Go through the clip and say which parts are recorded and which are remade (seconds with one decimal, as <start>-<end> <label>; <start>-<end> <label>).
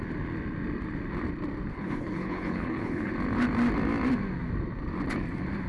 0.0-1.7 recorded; 1.7-3.1 remade; 3.1-5.7 recorded